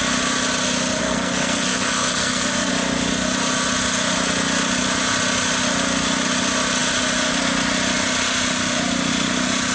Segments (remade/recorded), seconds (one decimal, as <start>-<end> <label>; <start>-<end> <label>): 0.0-1.0 recorded; 1.0-2.7 remade; 2.7-9.7 recorded